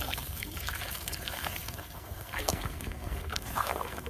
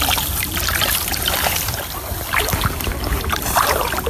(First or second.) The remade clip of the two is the first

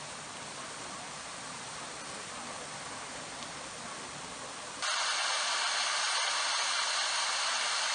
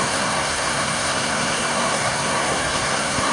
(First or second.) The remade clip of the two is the second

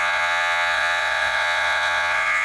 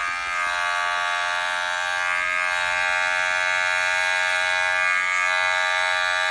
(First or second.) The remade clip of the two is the first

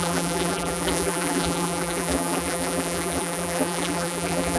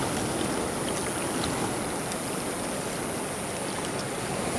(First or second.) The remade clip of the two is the first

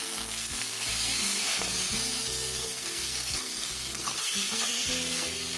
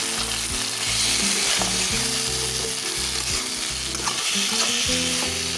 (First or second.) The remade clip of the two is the first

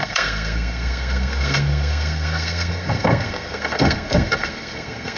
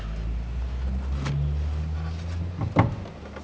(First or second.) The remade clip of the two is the first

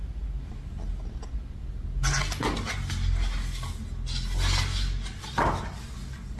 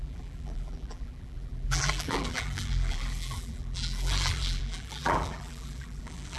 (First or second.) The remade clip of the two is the second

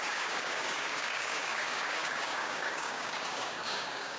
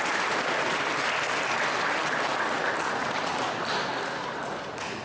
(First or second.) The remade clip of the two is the first